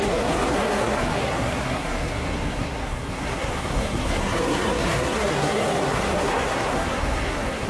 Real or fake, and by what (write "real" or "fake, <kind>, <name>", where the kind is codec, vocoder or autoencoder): fake, codec, SNAC